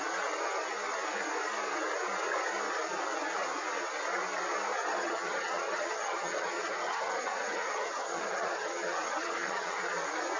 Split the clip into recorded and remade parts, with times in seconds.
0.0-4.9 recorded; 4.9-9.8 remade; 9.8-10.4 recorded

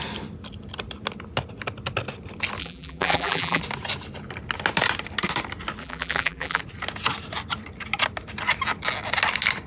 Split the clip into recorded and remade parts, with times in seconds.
0.0-2.6 recorded; 2.6-3.6 remade; 3.6-5.8 recorded; 5.8-6.6 remade; 6.6-9.7 recorded

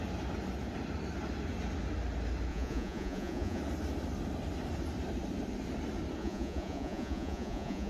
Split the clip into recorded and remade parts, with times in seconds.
0.0-2.5 recorded; 2.5-3.6 remade; 3.6-6.2 recorded; 6.2-7.9 remade

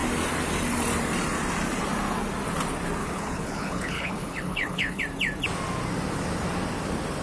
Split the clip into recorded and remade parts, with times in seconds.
0.0-3.0 recorded; 3.0-5.0 remade; 5.0-7.2 recorded